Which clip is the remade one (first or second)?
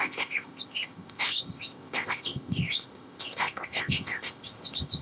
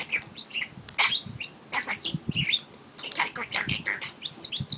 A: first